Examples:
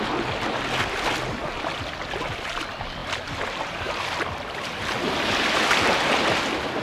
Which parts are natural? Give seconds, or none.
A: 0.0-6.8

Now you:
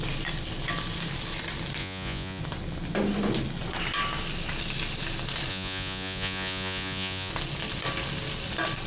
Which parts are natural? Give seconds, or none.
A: 0.0-1.8; 2.4-5.5; 7.3-8.9

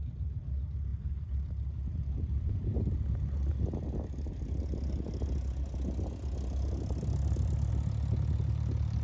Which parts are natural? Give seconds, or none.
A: 0.0-9.0

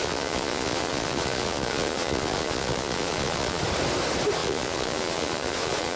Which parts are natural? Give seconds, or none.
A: 3.6-4.4

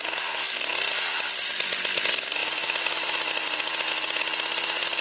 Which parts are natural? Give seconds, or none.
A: 0.0-5.0

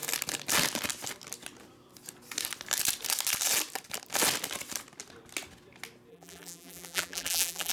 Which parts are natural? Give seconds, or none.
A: 0.0-6.1